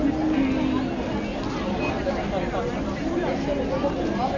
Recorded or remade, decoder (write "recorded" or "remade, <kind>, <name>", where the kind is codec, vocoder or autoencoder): recorded